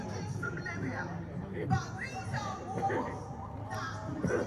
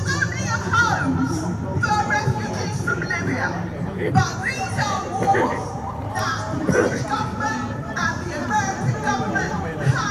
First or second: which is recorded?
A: first